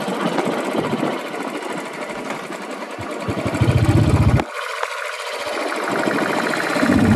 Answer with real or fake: real